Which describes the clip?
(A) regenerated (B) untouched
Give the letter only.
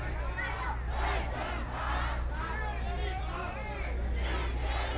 B